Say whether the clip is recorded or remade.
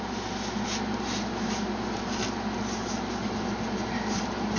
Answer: recorded